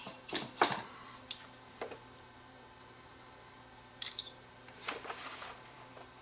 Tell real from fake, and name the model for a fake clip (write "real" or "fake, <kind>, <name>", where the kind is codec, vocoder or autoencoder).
fake, vocoder, BigVGAN v2